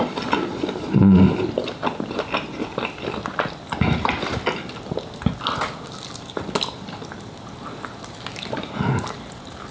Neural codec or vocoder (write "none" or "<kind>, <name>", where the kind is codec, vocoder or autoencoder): none